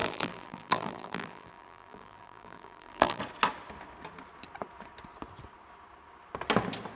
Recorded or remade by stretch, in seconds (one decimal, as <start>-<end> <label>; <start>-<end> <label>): 0.0-3.2 remade; 3.2-7.0 recorded